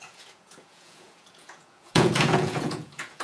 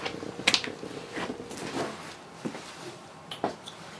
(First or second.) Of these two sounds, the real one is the second